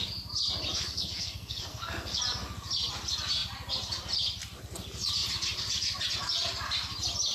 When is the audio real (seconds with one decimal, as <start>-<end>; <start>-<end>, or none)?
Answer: 0.0-0.7; 2.2-7.3